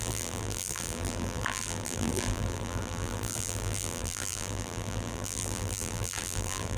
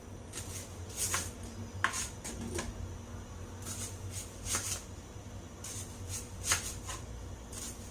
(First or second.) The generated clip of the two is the first